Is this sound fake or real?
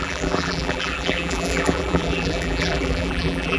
fake